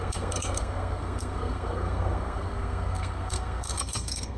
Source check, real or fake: fake